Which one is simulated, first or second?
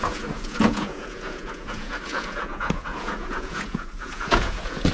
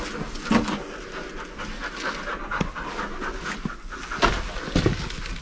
first